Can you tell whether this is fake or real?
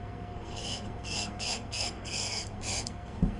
fake